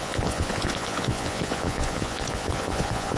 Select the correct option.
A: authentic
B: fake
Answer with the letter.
B